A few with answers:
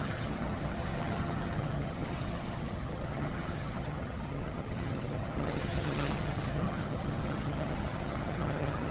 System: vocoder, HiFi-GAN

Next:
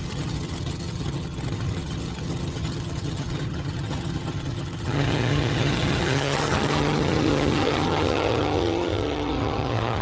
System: vocoder, HiFi-GAN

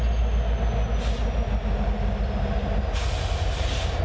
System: none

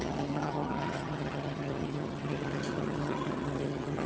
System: vocoder, HiFi-GAN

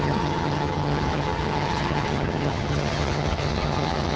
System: vocoder, HiFi-GAN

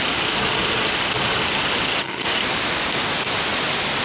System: none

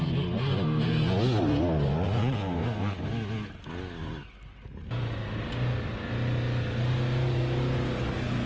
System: none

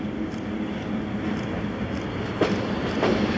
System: none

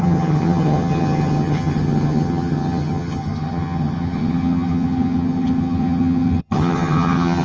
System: vocoder, HiFi-GAN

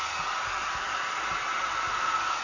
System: none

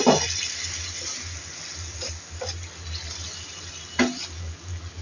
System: none